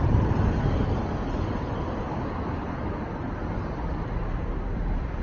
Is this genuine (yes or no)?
yes